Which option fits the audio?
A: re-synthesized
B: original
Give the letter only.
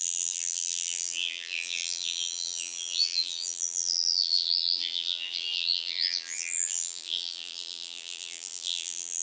A